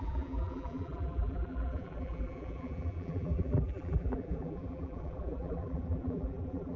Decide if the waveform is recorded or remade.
remade